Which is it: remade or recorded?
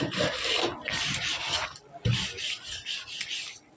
recorded